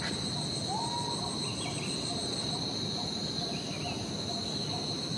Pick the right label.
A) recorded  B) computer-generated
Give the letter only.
A